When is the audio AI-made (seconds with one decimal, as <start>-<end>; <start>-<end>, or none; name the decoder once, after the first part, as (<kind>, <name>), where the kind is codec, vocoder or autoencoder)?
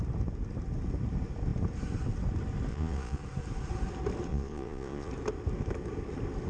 2.7-3.2 (vocoder, Vocos); 4.3-5.1